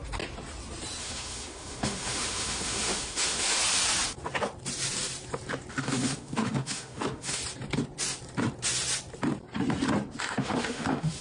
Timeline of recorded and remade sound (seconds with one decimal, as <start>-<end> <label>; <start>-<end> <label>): 0.0-1.0 recorded; 1.0-3.6 remade; 3.6-5.7 recorded; 5.7-7.4 remade; 7.4-10.2 recorded; 10.2-11.2 remade